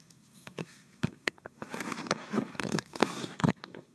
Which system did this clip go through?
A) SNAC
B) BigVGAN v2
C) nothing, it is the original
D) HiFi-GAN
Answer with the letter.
A